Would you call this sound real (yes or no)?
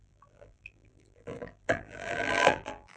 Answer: no